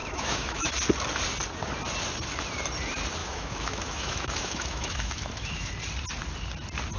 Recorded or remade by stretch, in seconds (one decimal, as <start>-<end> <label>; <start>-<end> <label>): 0.0-0.7 remade; 0.7-3.2 recorded; 3.2-5.7 remade; 5.7-7.0 recorded